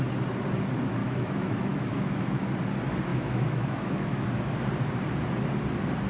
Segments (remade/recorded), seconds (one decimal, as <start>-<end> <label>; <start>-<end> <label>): 0.0-1.0 recorded; 1.0-2.5 remade; 2.5-3.1 recorded; 3.1-4.6 remade; 4.6-6.1 recorded